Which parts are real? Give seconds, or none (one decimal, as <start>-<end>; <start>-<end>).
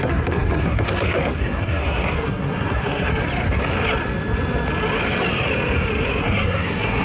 3.1-6.2